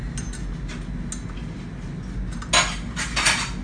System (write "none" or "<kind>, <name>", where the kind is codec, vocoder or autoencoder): none